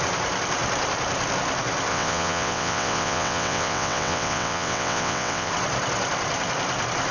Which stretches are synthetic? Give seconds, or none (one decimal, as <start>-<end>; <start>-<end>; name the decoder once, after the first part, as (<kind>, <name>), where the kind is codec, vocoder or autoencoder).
1.9-5.5 (vocoder, WaveNeXt)